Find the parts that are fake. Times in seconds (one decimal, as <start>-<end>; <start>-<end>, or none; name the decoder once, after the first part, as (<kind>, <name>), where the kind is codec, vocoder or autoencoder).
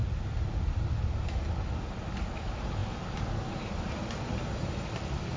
none